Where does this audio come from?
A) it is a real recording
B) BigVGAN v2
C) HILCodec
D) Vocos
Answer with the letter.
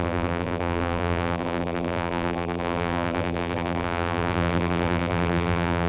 B